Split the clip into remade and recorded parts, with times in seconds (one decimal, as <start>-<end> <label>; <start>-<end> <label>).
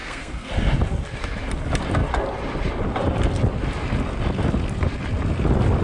0.0-0.5 remade; 0.5-5.8 recorded